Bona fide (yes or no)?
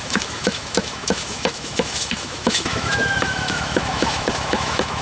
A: no